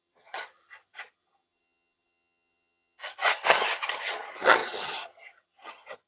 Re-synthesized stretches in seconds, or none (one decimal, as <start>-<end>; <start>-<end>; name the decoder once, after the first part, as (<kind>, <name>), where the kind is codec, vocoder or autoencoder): 0.0-6.1 (vocoder, HiFi-GAN)